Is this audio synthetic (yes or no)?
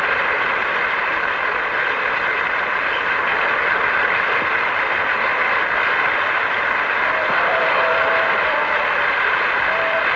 yes